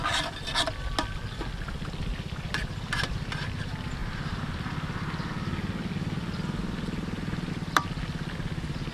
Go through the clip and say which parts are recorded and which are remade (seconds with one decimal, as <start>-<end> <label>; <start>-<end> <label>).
0.0-8.9 recorded